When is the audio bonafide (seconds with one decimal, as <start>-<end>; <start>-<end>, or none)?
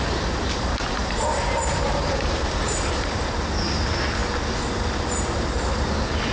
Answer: 0.0-1.0; 3.2-6.3